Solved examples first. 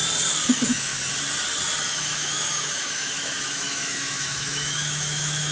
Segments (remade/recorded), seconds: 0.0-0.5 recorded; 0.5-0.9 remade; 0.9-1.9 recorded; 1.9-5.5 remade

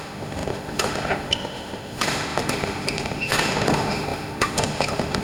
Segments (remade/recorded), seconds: 0.0-5.2 remade

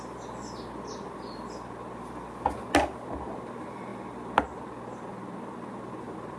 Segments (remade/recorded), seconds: 0.0-6.4 recorded

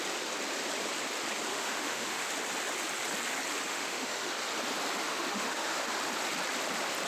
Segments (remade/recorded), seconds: 0.0-1.5 recorded; 1.5-2.3 remade; 2.3-3.7 recorded; 3.7-4.3 remade; 4.3-5.0 recorded; 5.0-5.9 remade; 5.9-7.1 recorded